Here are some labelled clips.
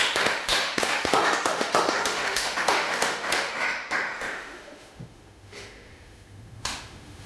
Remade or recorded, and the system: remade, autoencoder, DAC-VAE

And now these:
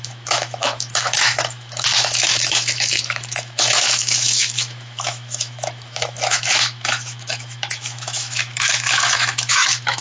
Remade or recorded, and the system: remade, autoencoder, DAC-VAE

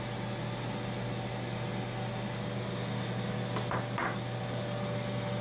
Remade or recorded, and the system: recorded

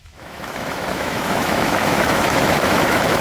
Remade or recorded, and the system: remade, autoencoder, DAC-VAE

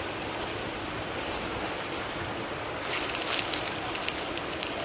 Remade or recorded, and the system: recorded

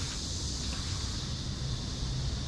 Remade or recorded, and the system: recorded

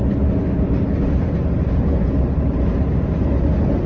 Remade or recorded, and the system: recorded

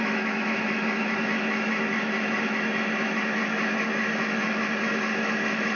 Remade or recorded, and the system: remade, autoencoder, DAC-VAE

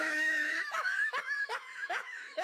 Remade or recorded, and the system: remade, autoencoder, DAC-VAE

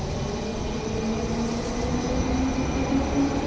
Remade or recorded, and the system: recorded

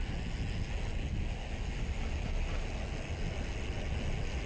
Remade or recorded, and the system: recorded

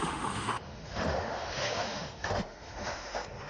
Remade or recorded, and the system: remade, autoencoder, DAC-VAE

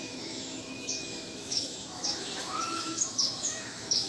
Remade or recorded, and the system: remade, autoencoder, DAC-VAE